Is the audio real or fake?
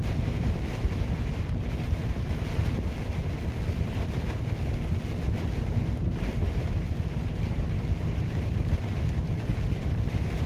real